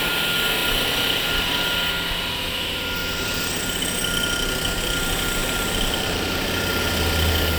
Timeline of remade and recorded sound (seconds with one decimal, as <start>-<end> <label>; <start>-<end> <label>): 0.0-3.0 recorded; 3.0-4.0 remade; 4.0-5.4 recorded; 5.4-6.8 remade; 6.8-7.6 recorded